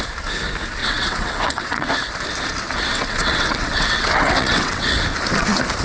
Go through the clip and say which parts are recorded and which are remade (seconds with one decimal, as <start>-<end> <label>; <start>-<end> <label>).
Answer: 0.0-0.8 recorded; 0.8-1.9 remade; 1.9-2.9 recorded; 2.9-5.0 remade; 5.0-5.8 recorded